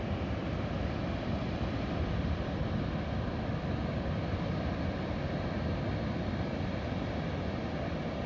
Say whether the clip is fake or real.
real